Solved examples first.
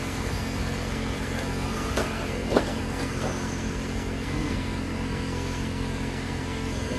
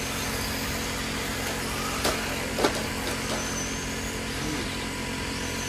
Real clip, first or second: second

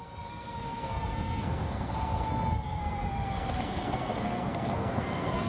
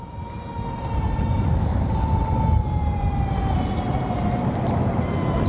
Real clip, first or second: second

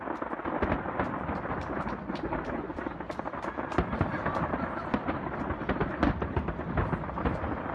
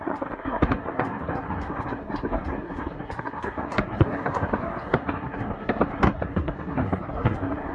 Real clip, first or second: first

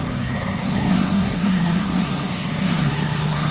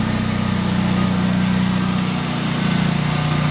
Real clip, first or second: second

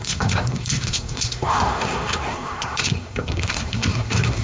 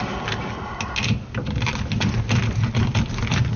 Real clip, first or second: second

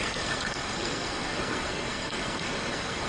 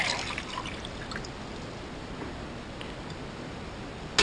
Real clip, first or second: second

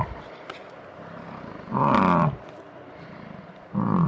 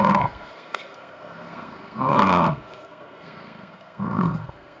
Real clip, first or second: first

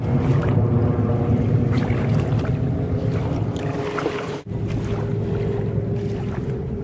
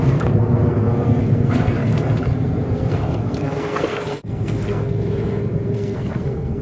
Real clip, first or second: first